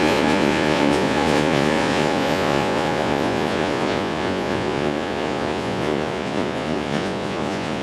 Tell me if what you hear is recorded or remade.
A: remade